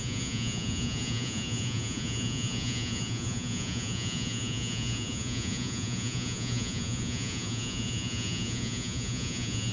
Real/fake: fake